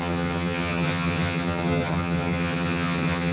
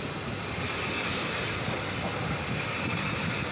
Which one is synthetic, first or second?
first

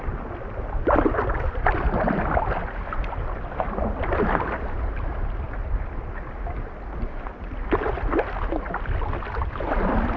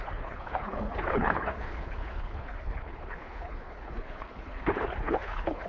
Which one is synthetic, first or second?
second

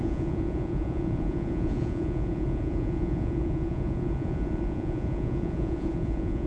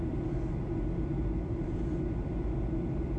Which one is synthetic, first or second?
first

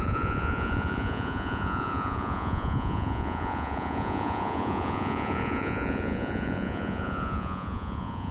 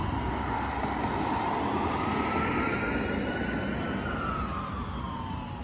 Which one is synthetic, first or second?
first